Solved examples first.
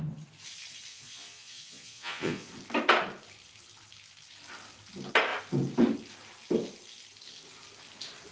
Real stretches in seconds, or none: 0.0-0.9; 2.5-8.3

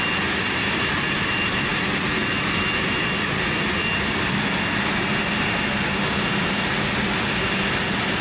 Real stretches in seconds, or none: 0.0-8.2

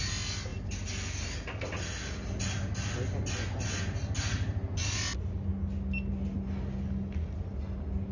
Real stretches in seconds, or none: 0.0-8.1

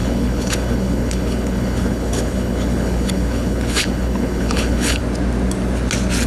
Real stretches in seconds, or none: 5.0-6.3

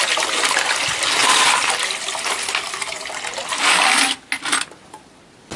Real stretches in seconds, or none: 0.0-5.6

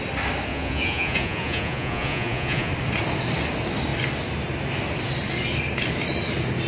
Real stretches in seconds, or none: 0.0-0.5; 2.7-6.7

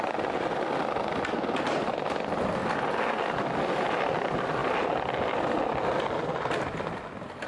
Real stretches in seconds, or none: 0.0-7.5

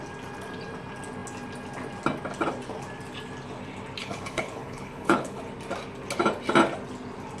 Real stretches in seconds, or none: 0.0-4.0; 5.4-7.4